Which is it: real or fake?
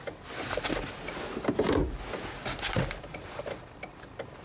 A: real